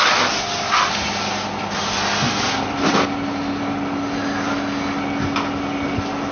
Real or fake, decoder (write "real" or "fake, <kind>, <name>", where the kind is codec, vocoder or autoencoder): real